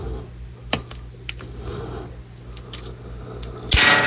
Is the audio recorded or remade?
recorded